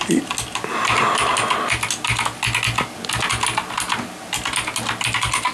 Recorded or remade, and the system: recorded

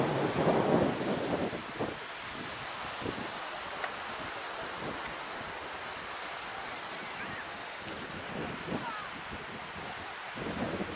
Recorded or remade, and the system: recorded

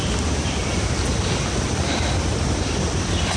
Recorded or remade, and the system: recorded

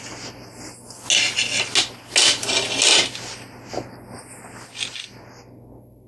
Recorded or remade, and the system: recorded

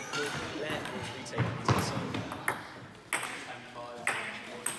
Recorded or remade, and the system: recorded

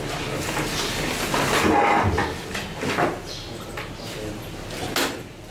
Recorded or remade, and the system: recorded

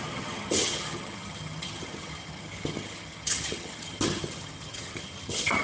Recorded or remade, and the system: remade, vocoder, HiFi-GAN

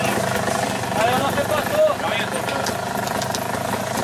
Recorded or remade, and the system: recorded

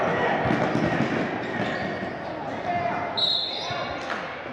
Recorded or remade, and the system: recorded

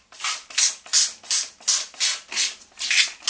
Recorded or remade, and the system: recorded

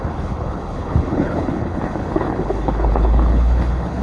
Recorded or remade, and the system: remade, codec, HILCodec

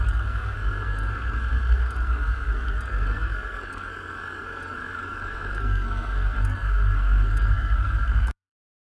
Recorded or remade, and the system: remade, codec, SNAC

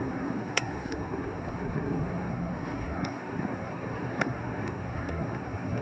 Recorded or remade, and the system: remade, codec, SNAC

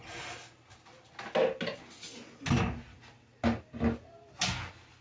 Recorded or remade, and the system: recorded